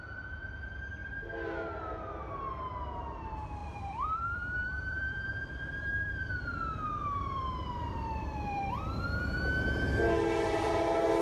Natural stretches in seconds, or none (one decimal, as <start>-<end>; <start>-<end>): 0.0-3.6; 8.7-11.2